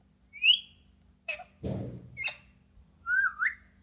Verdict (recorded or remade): recorded